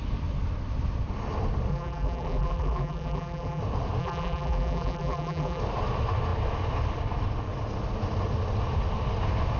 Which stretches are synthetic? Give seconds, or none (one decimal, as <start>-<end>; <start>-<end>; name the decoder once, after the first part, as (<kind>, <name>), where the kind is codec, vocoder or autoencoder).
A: 1.7-3.6 (vocoder, BigVGAN v2); 4.0-5.6